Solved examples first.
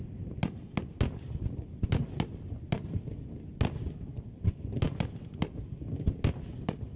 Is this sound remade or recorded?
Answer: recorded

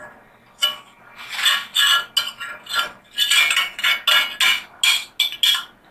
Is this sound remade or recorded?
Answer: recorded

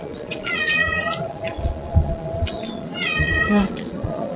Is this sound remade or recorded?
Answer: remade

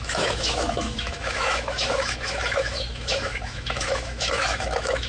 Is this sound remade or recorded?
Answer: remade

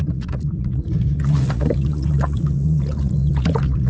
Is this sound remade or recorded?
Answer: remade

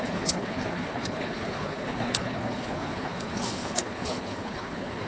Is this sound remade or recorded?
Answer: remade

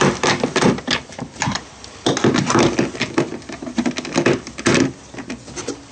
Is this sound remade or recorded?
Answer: recorded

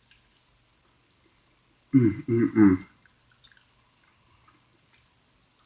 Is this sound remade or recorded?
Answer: recorded